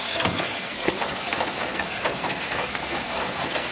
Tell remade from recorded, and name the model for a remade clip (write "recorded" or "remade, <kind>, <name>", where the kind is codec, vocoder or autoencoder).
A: remade, codec, SNAC